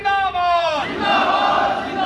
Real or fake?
fake